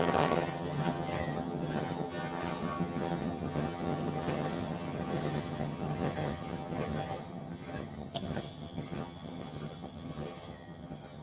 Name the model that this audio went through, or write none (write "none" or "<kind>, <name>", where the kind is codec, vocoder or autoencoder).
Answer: vocoder, HiFi-GAN